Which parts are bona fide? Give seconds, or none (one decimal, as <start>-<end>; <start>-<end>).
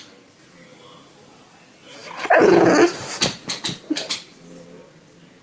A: 0.0-5.4